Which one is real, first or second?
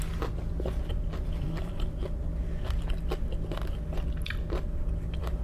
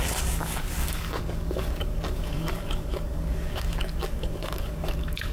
first